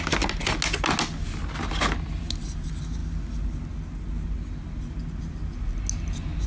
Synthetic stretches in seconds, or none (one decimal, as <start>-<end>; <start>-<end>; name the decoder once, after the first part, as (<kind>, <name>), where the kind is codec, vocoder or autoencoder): none